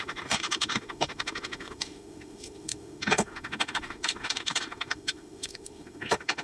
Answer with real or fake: fake